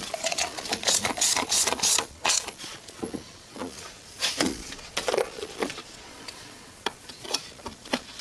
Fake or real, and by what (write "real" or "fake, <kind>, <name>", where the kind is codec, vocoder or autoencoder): fake, vocoder, Vocos